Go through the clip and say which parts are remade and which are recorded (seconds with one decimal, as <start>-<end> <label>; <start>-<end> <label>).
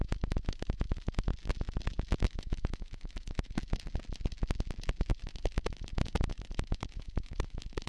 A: 0.0-1.3 remade; 1.3-2.3 recorded; 2.3-3.6 remade; 3.6-5.1 recorded; 5.1-7.9 remade